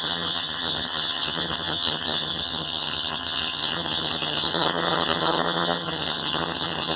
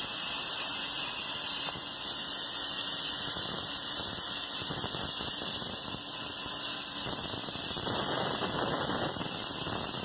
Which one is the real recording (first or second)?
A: second